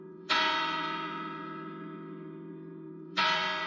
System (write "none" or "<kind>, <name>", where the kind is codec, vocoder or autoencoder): vocoder, Vocos